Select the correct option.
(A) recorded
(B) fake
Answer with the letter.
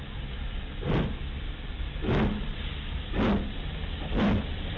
A